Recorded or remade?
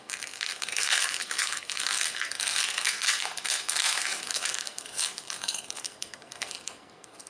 remade